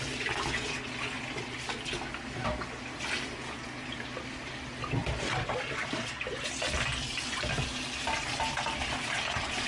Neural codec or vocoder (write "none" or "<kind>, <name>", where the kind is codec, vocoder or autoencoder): none